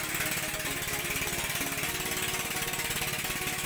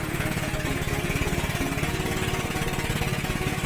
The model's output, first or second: second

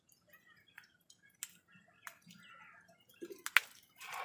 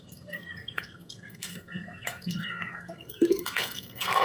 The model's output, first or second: second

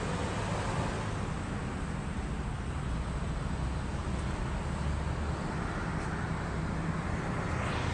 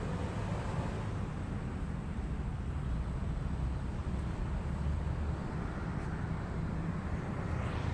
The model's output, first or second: second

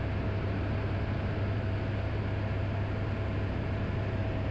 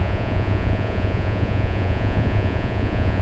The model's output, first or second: second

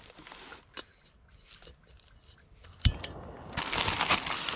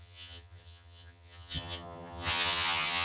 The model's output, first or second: second